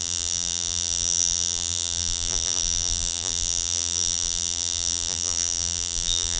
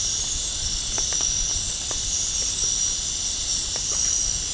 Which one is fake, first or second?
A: first